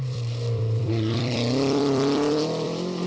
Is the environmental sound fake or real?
fake